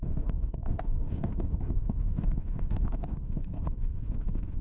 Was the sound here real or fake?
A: fake